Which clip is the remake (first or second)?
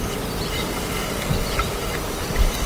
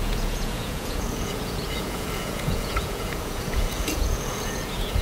second